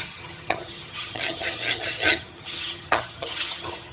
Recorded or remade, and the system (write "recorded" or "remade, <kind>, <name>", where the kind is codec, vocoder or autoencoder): remade, vocoder, HiFi-GAN